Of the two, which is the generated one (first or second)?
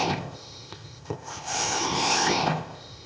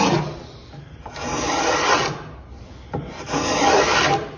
first